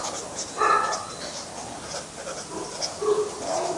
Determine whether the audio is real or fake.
real